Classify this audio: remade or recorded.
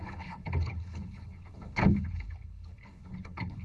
remade